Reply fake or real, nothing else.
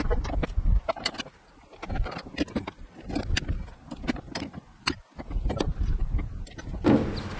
real